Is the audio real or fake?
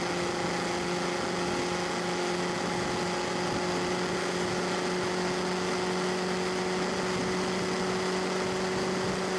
real